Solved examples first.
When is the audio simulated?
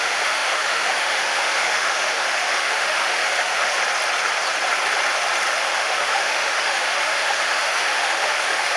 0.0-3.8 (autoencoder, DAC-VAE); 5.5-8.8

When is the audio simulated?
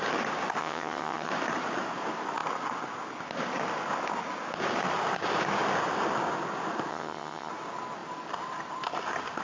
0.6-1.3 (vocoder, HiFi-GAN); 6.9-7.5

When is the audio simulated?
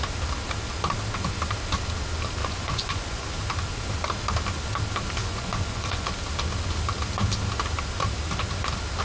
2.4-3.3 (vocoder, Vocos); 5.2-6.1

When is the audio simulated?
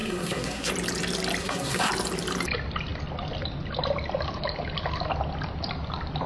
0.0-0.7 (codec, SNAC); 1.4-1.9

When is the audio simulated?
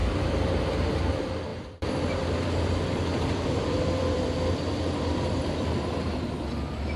0.0-7.0 (vocoder, BigVGAN v2)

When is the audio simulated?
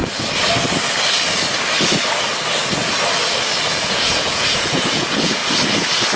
3.7-5.4 (vocoder, Vocos)